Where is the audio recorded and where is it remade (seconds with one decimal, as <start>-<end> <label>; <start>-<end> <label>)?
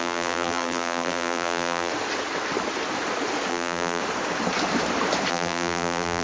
0.0-1.9 remade; 1.9-3.5 recorded; 3.5-4.0 remade; 4.0-5.3 recorded; 5.3-6.2 remade